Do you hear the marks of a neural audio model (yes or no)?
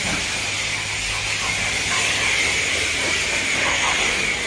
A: no